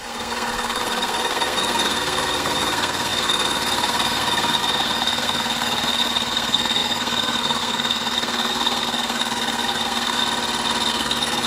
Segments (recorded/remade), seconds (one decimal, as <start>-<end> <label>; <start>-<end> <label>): 0.0-10.2 remade; 10.2-10.9 recorded; 10.9-11.5 remade